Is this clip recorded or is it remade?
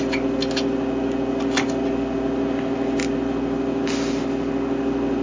recorded